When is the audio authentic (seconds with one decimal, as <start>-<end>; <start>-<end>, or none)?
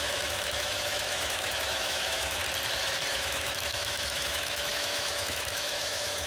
2.4-3.1